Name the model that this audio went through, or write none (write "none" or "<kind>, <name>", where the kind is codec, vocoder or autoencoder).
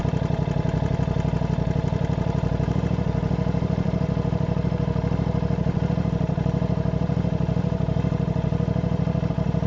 vocoder, BigVGAN v2